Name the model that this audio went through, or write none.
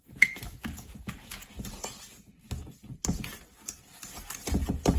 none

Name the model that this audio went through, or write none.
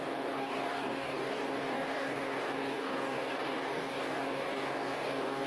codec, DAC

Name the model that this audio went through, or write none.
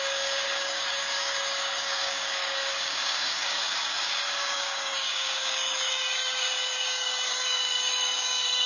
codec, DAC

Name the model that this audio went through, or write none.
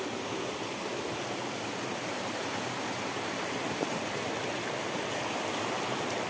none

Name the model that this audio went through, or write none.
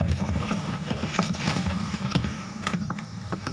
codec, DAC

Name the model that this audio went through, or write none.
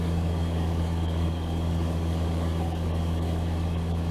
codec, DAC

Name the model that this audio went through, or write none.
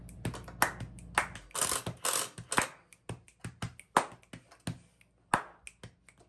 none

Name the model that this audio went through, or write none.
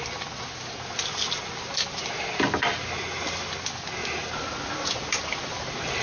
none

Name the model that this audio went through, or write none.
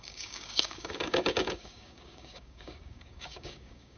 codec, DAC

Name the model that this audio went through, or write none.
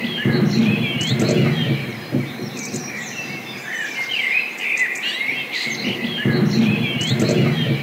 none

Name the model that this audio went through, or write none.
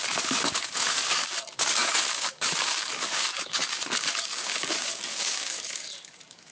codec, DAC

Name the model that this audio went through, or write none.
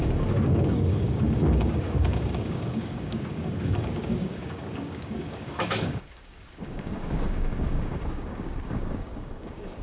codec, DAC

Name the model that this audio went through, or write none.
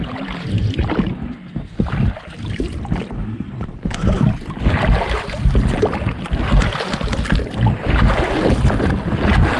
none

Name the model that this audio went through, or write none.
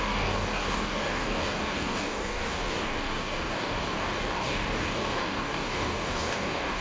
codec, DAC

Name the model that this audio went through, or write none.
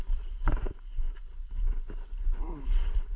none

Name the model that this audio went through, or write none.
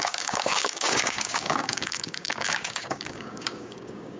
codec, DAC